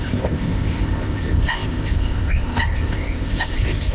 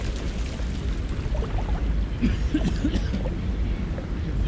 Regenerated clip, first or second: first